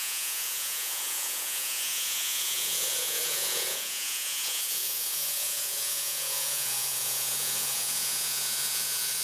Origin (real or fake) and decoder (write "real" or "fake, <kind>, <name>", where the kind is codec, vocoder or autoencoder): fake, vocoder, Vocos